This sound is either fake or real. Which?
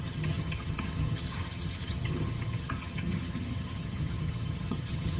fake